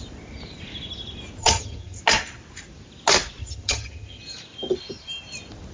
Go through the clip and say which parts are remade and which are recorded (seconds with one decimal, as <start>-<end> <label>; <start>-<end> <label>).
0.0-1.4 recorded; 1.4-2.0 remade; 2.0-3.4 recorded; 3.4-4.2 remade; 4.2-5.7 recorded